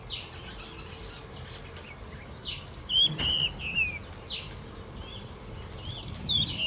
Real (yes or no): yes